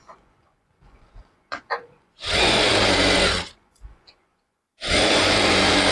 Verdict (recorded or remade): remade